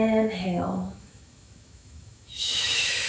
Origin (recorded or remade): remade